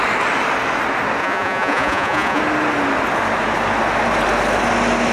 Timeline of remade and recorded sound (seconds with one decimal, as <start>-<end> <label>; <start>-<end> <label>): 0.0-1.2 recorded; 1.2-2.4 remade; 2.4-5.1 recorded